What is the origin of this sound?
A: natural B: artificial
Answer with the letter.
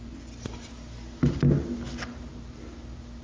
A